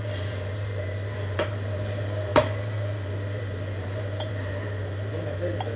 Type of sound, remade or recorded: remade